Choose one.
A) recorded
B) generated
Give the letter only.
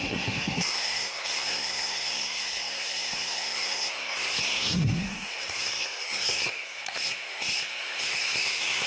B